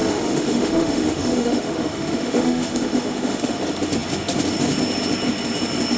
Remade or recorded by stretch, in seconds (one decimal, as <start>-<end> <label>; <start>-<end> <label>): 0.0-3.6 remade; 3.6-6.0 recorded